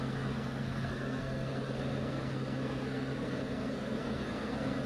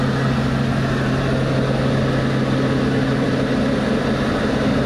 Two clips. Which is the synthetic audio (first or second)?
first